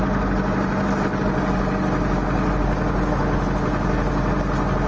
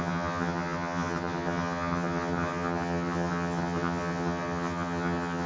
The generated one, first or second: second